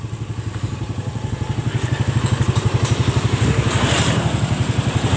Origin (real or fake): fake